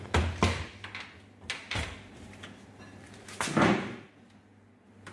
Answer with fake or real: real